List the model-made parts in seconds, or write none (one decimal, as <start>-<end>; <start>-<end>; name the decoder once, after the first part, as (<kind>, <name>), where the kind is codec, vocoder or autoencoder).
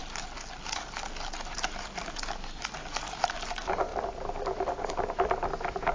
none